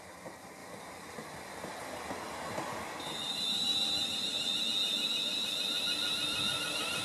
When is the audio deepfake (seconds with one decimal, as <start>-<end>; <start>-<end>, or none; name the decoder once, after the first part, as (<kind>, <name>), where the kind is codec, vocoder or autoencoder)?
0.6-4.6 (vocoder, BigVGAN v2)